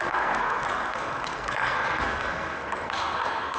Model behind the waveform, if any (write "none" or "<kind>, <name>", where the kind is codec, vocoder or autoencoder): codec, SNAC